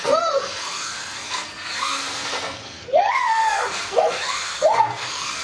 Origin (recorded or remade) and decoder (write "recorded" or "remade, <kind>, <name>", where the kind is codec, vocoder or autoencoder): remade, codec, SNAC